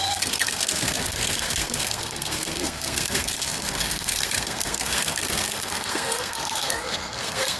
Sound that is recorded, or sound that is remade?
remade